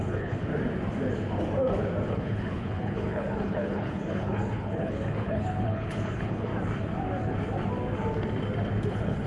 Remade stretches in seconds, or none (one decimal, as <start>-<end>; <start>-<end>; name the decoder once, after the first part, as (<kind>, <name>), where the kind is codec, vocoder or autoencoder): 0.0-0.5 (codec, HILCodec); 2.1-6.5; 8.9-9.3